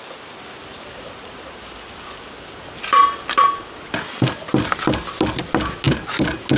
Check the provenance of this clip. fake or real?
real